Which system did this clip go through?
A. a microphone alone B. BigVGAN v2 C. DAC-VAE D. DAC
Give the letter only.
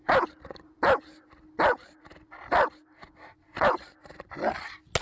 A